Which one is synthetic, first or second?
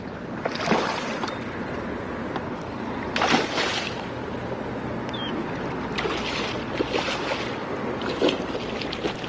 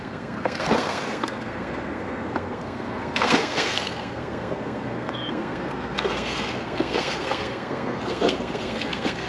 second